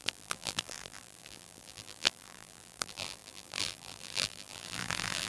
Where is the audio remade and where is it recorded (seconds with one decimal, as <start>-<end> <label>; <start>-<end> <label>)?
0.0-5.3 remade